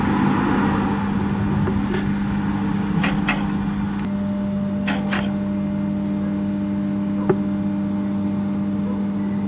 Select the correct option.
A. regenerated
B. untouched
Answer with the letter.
B